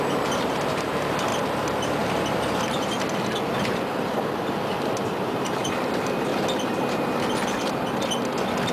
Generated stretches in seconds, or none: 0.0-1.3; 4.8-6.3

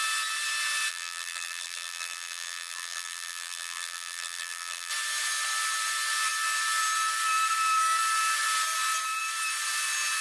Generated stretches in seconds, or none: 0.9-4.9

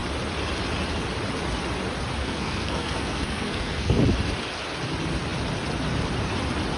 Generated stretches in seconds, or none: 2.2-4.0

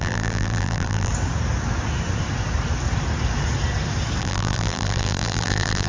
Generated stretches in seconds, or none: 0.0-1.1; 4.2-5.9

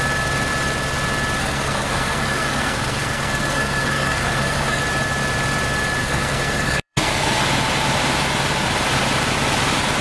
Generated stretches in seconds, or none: 1.4-4.8; 6.0-7.4